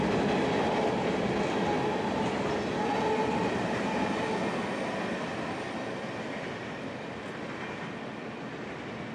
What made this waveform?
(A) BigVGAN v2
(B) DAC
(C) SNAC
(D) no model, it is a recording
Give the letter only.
D